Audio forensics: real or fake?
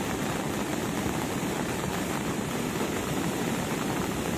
fake